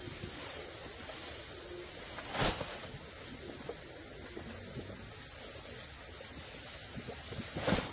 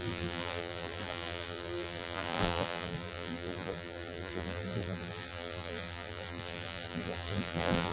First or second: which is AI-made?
second